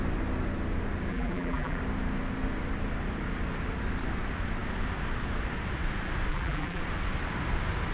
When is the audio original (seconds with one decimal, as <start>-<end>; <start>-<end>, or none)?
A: 0.0-1.1; 1.8-6.3; 6.8-7.9